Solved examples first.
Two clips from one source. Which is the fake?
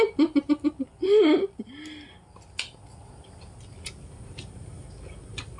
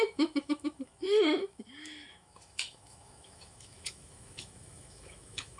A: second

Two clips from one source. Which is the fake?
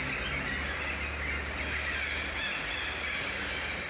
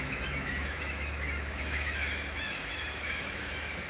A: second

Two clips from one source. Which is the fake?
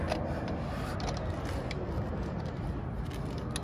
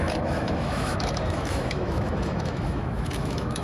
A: second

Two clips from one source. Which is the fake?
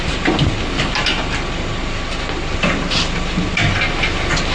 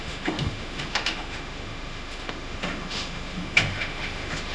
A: second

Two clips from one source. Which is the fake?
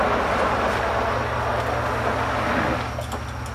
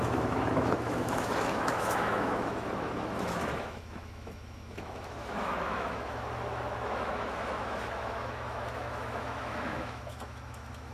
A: second